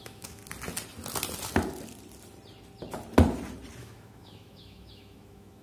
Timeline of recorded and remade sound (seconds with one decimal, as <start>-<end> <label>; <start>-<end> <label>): 0.0-0.4 remade; 0.4-3.8 recorded; 3.8-5.6 remade